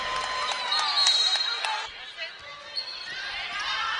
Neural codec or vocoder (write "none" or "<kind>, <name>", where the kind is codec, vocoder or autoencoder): none